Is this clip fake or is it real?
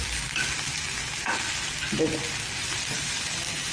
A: real